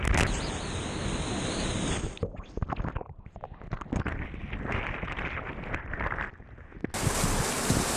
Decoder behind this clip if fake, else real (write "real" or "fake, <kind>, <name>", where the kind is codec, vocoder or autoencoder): real